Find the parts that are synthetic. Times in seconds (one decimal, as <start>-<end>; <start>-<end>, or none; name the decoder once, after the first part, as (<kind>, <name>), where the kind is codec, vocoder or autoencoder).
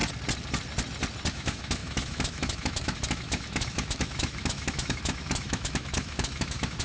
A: 1.3-6.8 (autoencoder, DAC-VAE)